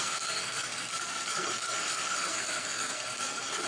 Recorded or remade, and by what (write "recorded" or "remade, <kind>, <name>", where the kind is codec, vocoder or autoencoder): remade, codec, SNAC